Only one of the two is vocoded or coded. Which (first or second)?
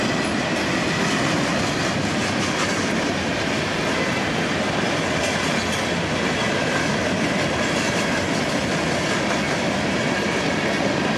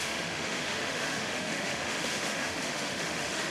second